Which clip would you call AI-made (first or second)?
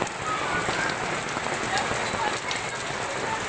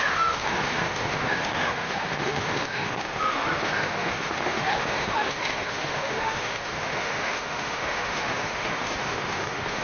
second